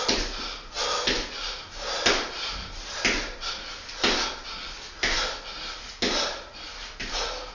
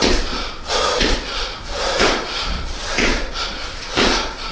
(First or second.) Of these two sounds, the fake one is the second